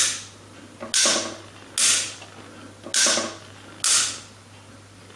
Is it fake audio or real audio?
real